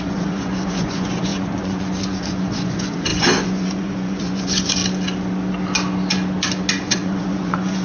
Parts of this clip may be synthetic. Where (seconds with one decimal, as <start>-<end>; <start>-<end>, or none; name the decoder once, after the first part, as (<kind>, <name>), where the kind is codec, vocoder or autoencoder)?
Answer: 0.0-4.8 (vocoder, Vocos); 6.7-7.8

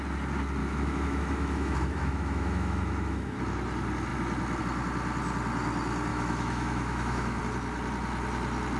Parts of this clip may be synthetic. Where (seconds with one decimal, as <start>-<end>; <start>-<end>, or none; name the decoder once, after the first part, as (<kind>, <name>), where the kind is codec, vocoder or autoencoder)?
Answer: 0.6-3.4 (autoencoder, DAC-VAE); 6.1-7.4

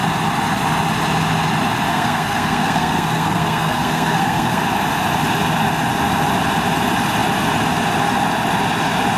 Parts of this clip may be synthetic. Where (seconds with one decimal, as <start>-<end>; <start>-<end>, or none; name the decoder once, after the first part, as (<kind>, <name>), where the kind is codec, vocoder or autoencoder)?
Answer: 1.9-4.6 (codec, SNAC)

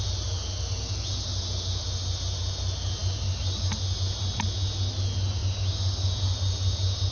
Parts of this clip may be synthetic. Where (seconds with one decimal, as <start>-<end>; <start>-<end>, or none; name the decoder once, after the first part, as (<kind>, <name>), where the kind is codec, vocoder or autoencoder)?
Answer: none

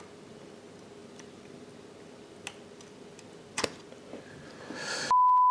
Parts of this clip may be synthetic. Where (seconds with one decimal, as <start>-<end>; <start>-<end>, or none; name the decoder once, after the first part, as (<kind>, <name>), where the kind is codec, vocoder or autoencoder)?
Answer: 1.0-1.7 (vocoder, BigVGAN v2)

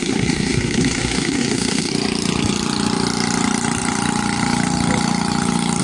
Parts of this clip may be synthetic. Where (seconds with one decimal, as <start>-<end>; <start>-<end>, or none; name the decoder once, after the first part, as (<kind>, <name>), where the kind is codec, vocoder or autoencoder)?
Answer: 0.0-1.9 (codec, SNAC)

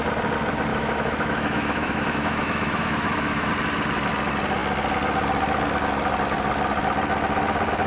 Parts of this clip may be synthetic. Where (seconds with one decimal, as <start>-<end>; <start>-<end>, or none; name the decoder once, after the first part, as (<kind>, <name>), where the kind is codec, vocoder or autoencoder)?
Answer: 0.7-3.5 (autoencoder, DAC-VAE)

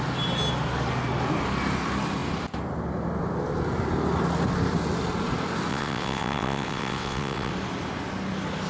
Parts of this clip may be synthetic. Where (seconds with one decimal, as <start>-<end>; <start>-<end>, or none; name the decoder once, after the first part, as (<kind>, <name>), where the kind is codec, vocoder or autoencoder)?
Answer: 5.7-7.5 (vocoder, WaveNeXt)